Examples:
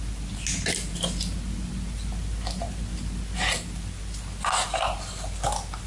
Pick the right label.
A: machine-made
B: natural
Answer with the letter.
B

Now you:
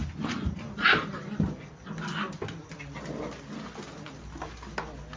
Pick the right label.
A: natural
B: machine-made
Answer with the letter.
A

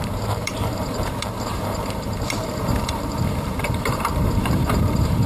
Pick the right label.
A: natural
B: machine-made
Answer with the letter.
B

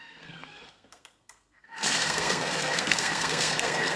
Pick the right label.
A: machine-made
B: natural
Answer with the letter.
A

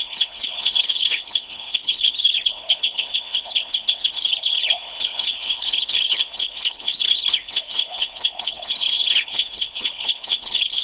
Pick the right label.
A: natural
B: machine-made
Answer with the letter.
B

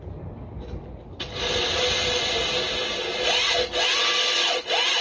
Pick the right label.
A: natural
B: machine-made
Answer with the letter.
A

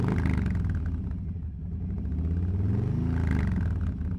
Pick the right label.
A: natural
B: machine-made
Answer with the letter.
A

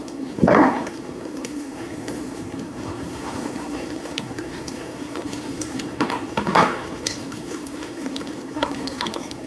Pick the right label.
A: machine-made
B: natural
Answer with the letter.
A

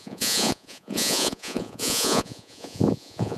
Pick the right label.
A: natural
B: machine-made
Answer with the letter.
B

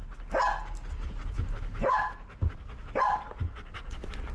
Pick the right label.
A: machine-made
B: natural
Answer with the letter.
B